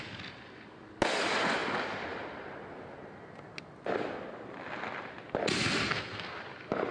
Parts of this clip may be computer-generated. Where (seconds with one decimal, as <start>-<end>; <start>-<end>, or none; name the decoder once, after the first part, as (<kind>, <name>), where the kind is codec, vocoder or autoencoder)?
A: 5.9-6.4 (codec, SNAC)